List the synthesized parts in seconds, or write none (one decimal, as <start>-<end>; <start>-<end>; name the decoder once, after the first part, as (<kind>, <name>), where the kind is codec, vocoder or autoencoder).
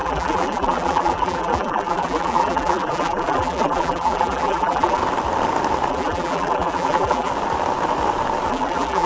0.0-5.0 (vocoder, BigVGAN v2); 5.9-7.3; 8.5-9.1